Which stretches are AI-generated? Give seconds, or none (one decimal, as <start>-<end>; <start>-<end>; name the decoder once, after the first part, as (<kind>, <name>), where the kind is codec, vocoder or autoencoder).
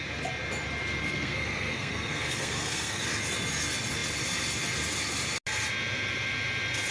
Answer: 1.0-3.0 (codec, SNAC)